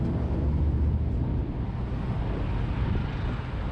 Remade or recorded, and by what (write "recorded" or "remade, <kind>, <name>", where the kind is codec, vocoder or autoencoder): recorded